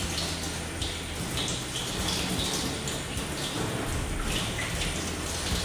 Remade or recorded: recorded